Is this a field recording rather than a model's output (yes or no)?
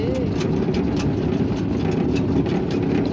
yes